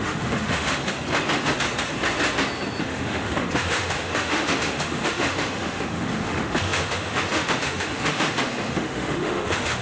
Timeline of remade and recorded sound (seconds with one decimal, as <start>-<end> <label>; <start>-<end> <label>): 0.0-0.8 remade; 0.8-2.8 recorded; 2.8-9.8 remade